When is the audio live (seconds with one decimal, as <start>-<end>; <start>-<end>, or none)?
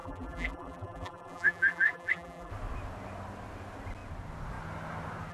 2.5-5.3